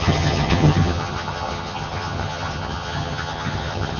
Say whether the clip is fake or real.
fake